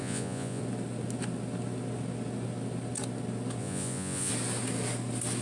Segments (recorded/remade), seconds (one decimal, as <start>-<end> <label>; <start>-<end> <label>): 0.0-0.6 remade; 0.6-3.6 recorded; 3.6-4.3 remade; 4.3-5.4 recorded